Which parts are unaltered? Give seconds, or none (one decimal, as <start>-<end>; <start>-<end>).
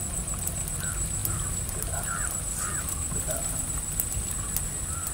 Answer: 0.0-5.1